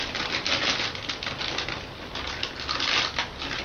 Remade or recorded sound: recorded